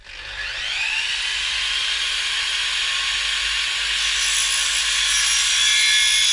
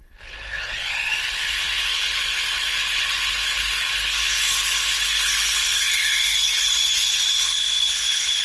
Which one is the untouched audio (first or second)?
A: first